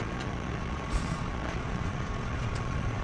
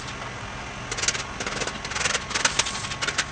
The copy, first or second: first